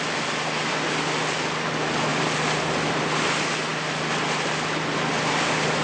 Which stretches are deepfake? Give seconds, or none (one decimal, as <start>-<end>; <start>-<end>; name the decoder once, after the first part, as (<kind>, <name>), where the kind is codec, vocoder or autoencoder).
none